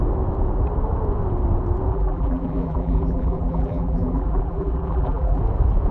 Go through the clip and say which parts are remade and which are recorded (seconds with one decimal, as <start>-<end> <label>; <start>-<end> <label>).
0.0-1.9 recorded; 1.9-5.4 remade; 5.4-5.9 recorded